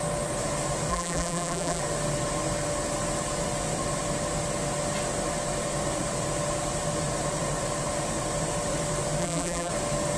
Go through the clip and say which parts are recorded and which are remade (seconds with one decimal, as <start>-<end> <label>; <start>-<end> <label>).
0.0-0.9 recorded; 0.9-1.8 remade; 1.8-9.2 recorded; 9.2-9.7 remade; 9.7-10.2 recorded